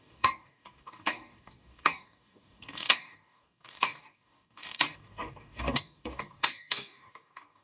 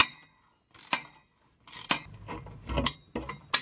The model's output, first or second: first